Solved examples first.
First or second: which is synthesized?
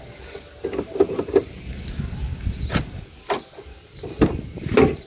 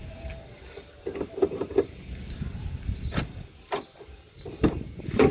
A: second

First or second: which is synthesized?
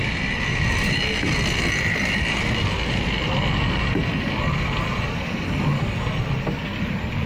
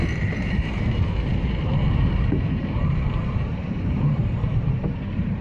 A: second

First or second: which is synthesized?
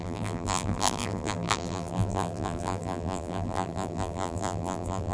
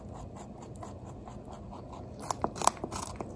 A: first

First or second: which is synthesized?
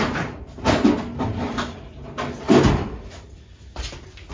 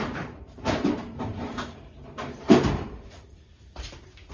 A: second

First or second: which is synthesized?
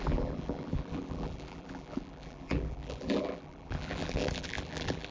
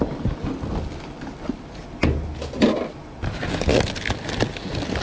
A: first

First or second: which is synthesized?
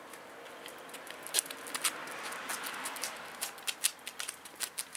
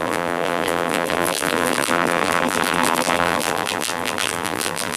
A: second